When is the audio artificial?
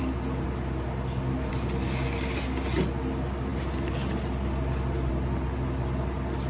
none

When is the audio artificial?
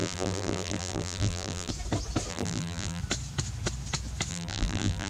0.0-1.7 (vocoder, BigVGAN v2); 2.3-3.0; 4.3-5.1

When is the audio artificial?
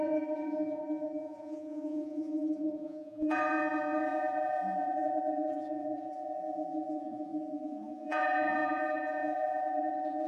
0.0-10.3 (vocoder, Vocos)